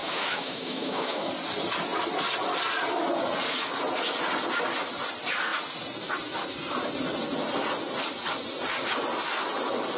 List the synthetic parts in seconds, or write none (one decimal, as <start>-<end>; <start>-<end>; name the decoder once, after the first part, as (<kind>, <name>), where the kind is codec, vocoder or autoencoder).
0.0-1.3 (autoencoder, DAC-VAE)